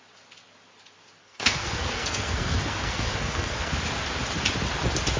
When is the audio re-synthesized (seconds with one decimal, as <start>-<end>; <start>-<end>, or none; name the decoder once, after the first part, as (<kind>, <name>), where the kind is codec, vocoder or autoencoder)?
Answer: 1.2-3.7 (codec, SNAC)

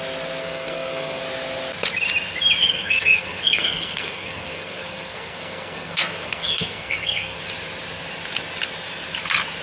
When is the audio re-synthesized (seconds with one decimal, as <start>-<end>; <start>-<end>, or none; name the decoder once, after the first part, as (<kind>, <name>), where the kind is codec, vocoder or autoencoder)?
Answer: 0.4-1.2 (codec, SNAC); 2.6-7.4

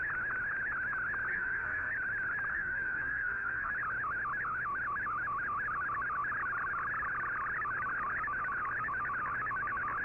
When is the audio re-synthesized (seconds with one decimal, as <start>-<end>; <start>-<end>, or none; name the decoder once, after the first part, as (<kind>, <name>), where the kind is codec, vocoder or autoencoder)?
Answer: 1.3-1.9 (codec, SNAC); 2.5-3.7

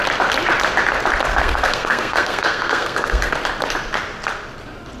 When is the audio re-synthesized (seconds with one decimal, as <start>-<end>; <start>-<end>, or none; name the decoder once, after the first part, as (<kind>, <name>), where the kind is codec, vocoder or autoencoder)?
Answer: 1.3-3.3 (codec, SNAC)

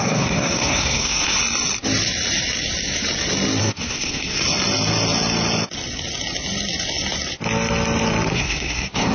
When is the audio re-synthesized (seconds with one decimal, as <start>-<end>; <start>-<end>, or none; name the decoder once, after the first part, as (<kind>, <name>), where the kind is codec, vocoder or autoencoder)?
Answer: 0.0-1.4 (codec, SNAC); 3.6-4.4; 8.3-9.1

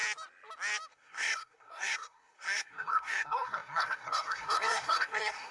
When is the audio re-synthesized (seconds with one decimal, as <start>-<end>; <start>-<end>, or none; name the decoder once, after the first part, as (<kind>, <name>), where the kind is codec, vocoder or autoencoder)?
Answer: 0.9-5.5 (codec, SNAC)